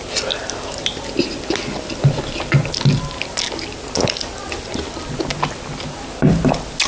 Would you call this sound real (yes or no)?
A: yes